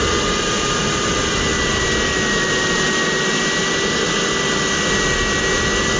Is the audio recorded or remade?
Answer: recorded